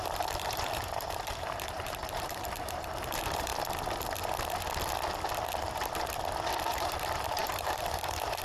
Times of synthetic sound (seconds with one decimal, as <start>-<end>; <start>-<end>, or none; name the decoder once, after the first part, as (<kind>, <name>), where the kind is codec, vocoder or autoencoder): 0.0-3.5 (vocoder, BigVGAN v2); 6.6-8.4